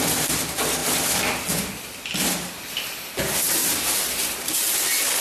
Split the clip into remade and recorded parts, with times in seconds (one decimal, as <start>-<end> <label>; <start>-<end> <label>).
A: 0.0-3.6 recorded; 3.6-4.6 remade; 4.6-5.2 recorded